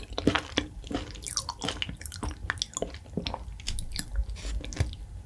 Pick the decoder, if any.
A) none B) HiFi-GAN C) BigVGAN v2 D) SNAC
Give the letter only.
A